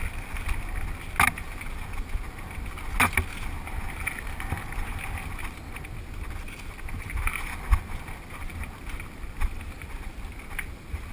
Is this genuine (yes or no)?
yes